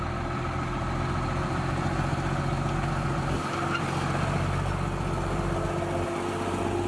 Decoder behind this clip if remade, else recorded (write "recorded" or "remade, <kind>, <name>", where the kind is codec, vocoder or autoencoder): recorded